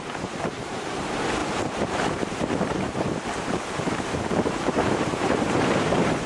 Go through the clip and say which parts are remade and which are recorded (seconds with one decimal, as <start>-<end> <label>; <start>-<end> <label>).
0.0-6.3 remade